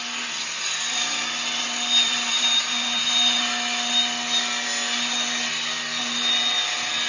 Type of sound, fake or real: real